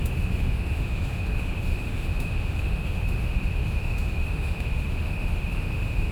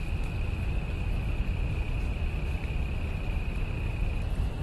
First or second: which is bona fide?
second